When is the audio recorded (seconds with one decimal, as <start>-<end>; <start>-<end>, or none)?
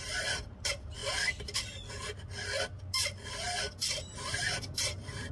1.0-3.6